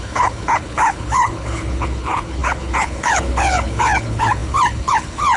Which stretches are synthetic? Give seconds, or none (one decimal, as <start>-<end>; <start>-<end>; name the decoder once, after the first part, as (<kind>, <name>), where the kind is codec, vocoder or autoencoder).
0.0-5.4 (codec, HILCodec)